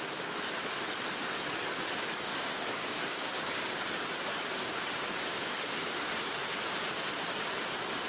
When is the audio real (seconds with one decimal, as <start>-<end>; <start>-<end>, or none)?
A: 0.0-2.3; 3.9-4.6; 5.9-8.1